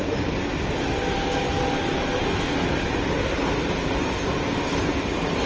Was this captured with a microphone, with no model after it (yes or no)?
yes